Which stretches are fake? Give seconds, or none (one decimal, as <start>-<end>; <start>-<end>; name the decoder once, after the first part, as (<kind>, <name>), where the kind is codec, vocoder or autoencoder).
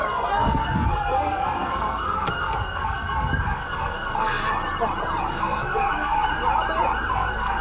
0.0-4.4 (codec, SNAC); 5.3-6.3; 7.1-7.6